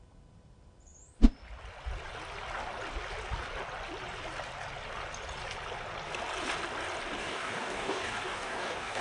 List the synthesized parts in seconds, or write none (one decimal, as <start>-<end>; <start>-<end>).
7.2-9.0